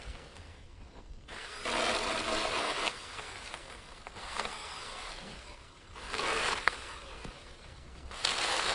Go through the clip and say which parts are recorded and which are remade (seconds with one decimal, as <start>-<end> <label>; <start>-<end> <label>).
0.0-1.6 remade; 1.6-2.5 recorded; 2.5-8.7 remade